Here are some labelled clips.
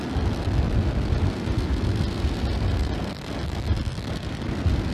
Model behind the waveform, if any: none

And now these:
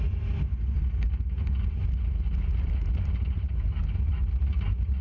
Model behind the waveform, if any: none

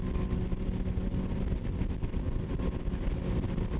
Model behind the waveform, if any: none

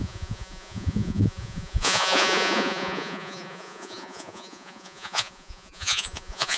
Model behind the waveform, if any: vocoder, Vocos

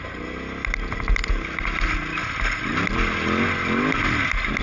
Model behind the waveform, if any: none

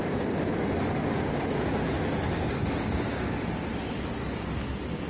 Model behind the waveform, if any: none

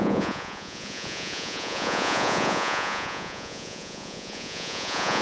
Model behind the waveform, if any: vocoder, Vocos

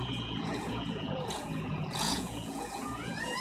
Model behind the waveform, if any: vocoder, Vocos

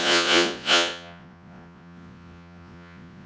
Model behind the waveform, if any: vocoder, Vocos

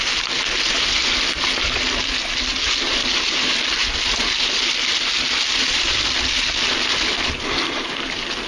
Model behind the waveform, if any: none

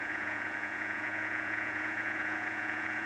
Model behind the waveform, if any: vocoder, Vocos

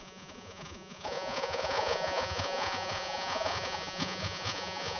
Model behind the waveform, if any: vocoder, Vocos